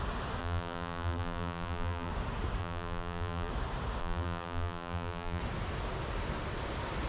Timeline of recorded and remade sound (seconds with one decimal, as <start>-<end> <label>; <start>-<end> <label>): 0.0-0.4 recorded; 0.4-2.1 remade; 2.1-2.6 recorded; 2.6-3.5 remade; 3.5-4.0 recorded; 4.0-5.4 remade; 5.4-7.1 recorded